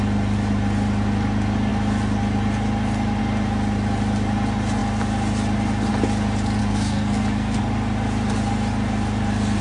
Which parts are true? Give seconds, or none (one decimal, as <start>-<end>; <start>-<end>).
0.0-6.6; 7.6-9.6